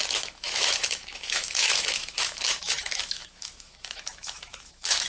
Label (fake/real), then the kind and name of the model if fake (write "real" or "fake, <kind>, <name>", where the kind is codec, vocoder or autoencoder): fake, autoencoder, DAC-VAE